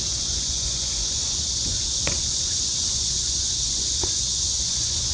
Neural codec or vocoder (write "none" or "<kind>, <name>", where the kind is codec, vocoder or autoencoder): vocoder, Vocos